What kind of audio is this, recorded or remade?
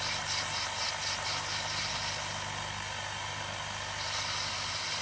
recorded